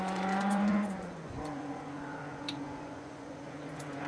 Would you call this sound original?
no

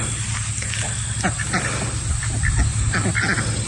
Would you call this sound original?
yes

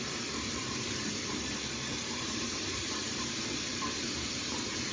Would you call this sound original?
no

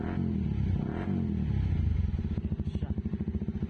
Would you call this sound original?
yes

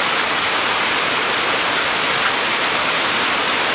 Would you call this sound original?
yes